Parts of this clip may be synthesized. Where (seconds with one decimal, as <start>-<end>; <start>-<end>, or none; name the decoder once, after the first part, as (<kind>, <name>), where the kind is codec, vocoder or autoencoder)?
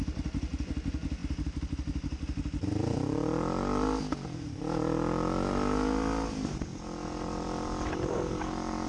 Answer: 1.2-4.6 (vocoder, BigVGAN v2); 6.7-8.1